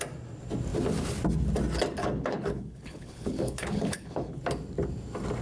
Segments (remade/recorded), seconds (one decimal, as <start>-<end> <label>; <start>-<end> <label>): 0.0-2.0 recorded; 2.0-4.4 remade; 4.4-5.4 recorded